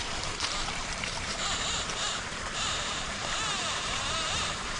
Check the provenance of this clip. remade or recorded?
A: remade